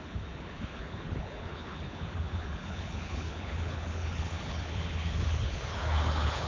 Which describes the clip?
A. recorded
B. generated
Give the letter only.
B